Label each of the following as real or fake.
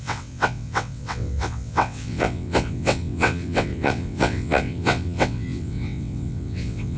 fake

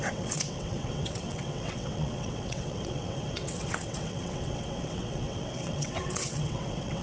fake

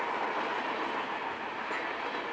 real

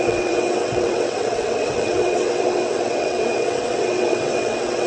fake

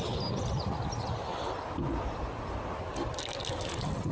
real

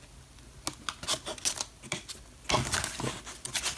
real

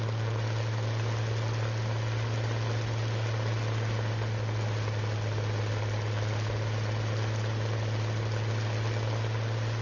real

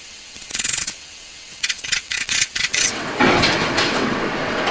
fake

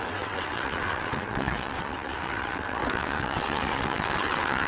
fake